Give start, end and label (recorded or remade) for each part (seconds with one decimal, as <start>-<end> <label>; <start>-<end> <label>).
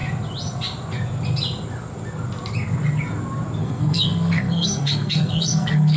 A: 0.0-3.6 recorded; 3.6-6.0 remade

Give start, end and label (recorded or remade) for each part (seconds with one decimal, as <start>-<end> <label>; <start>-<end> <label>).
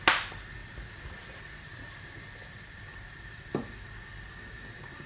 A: 0.0-0.6 recorded; 0.6-3.4 remade; 3.4-5.1 recorded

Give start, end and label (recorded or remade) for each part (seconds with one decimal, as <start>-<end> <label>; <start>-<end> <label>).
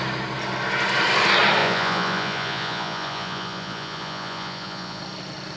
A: 0.0-1.6 recorded; 1.6-5.0 remade; 5.0-5.6 recorded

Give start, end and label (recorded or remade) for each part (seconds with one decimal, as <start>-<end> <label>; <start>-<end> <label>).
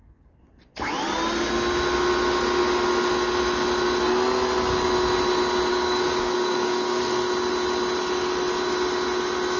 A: 0.0-5.7 recorded; 5.7-7.0 remade; 7.0-9.6 recorded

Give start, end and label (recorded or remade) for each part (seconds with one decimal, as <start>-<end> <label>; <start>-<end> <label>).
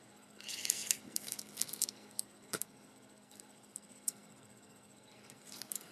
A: 0.0-5.9 remade